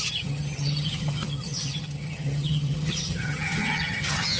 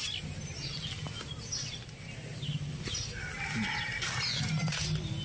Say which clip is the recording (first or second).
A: second